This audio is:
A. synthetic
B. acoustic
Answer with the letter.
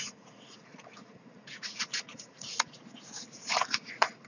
A